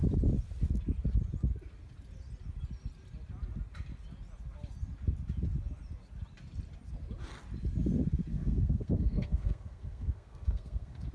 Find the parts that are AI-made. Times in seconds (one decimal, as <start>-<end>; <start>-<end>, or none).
8.3-11.1